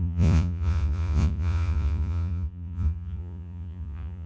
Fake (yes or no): yes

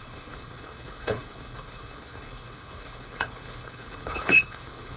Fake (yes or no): yes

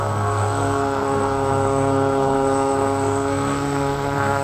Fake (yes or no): yes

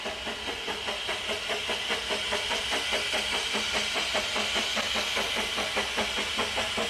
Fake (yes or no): no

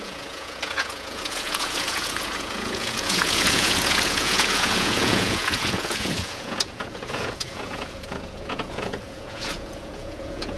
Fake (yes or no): yes